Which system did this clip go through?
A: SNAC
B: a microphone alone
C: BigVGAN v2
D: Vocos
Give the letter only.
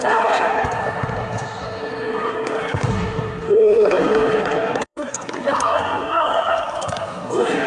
A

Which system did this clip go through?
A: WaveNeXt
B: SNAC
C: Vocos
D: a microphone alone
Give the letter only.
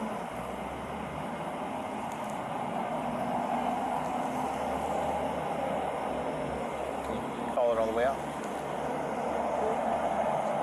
D